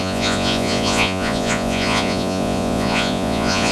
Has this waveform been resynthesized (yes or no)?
yes